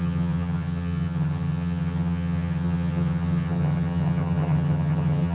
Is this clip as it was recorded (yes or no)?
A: no